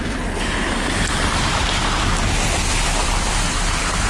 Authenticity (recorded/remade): remade